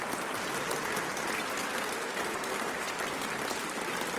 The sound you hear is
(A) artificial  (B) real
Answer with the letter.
B